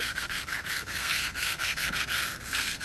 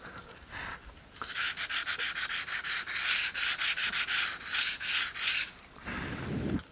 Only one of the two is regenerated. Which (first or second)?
first